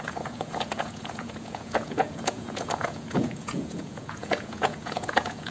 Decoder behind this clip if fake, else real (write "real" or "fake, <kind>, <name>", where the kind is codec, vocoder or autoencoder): fake, vocoder, Vocos